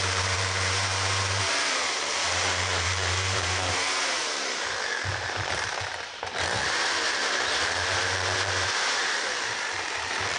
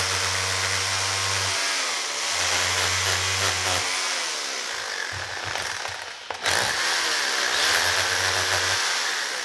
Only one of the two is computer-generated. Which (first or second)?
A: first